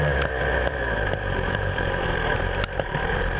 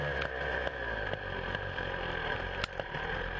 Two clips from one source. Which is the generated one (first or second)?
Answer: first